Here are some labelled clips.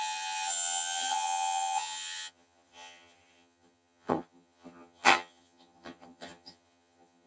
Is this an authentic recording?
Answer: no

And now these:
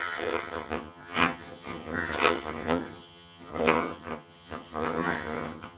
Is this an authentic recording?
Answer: no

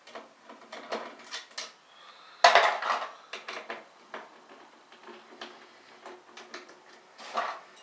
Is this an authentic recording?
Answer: yes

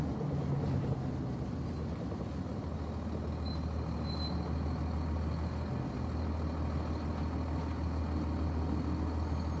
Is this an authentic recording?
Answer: yes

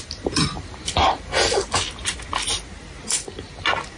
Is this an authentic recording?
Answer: yes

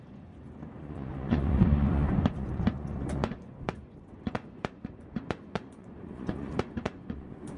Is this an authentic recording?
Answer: no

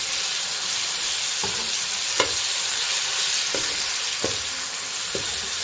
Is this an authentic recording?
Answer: yes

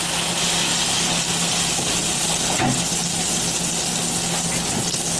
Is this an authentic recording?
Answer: yes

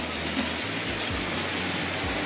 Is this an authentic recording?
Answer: yes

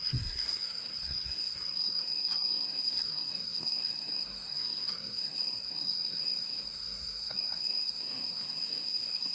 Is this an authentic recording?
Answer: no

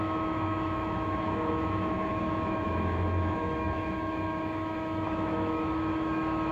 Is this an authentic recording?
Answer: no